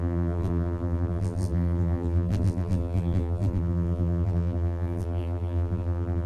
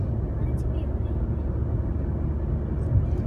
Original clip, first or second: second